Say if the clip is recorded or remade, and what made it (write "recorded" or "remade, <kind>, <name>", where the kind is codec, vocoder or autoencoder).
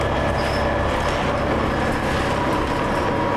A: recorded